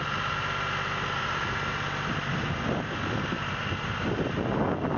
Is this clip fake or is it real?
real